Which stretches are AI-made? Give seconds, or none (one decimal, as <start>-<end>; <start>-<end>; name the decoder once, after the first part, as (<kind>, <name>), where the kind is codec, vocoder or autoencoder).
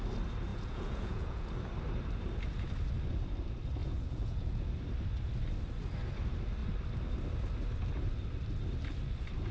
0.5-1.5 (vocoder, Vocos); 3.8-4.7